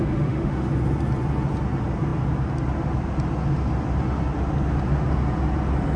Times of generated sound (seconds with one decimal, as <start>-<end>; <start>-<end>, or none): 0.0-0.7